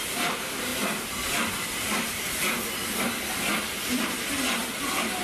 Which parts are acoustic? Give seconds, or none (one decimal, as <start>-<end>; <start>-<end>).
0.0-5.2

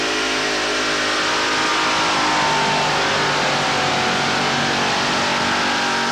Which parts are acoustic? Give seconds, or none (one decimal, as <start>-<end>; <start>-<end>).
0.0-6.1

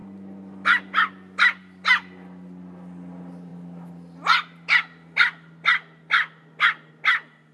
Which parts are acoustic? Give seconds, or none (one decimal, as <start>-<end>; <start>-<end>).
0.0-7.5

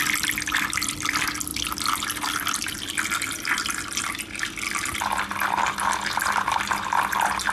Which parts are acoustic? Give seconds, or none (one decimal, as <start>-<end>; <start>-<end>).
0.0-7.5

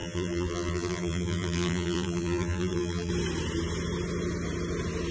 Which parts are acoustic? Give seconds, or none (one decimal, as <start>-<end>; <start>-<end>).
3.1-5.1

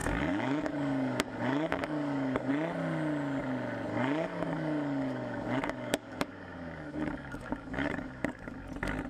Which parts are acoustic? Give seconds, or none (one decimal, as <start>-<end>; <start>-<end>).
2.5-3.9; 8.7-9.1

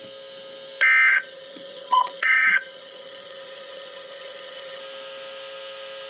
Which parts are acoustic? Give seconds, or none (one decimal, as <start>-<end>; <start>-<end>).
0.0-1.1; 4.8-6.1

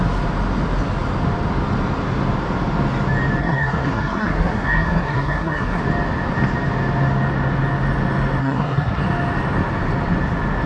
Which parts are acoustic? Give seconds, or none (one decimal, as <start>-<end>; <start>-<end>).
0.0-3.4; 5.8-8.4; 9.0-10.7